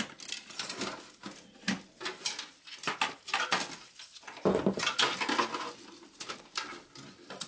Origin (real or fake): real